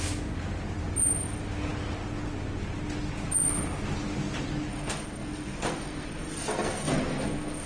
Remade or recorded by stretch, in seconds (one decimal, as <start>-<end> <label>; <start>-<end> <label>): 0.0-4.7 recorded; 4.7-7.7 remade